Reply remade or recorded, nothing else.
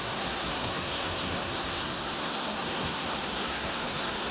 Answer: remade